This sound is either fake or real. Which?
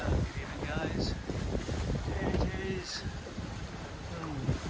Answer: real